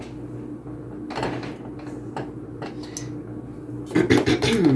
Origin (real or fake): real